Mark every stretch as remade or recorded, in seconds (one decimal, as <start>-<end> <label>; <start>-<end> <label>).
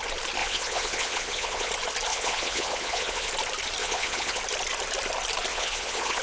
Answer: 0.0-0.4 recorded; 0.4-1.7 remade; 1.7-2.1 recorded; 2.1-3.3 remade; 3.3-3.8 recorded; 3.8-4.4 remade; 4.4-5.5 recorded; 5.5-6.2 remade